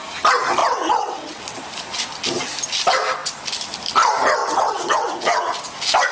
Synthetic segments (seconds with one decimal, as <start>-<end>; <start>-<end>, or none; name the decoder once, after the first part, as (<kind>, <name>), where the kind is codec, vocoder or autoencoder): 0.6-1.4 (vocoder, WaveNeXt); 4.4-5.1